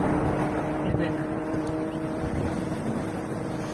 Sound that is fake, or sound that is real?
real